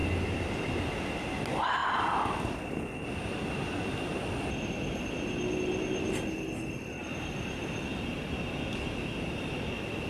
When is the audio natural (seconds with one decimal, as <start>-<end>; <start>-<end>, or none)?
0.0-7.0; 8.5-10.1